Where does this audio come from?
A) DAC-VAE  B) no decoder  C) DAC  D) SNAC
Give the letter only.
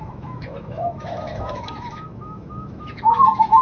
A